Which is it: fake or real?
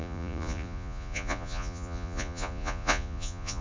fake